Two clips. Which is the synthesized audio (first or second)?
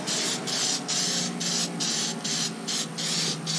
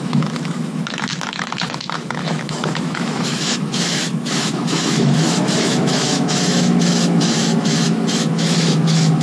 second